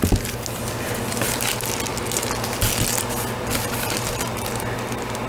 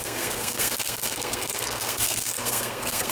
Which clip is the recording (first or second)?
first